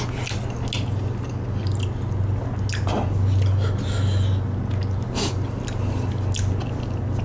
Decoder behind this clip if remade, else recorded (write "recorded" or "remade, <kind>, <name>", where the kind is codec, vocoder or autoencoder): recorded